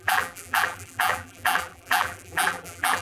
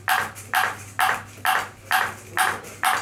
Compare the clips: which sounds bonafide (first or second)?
second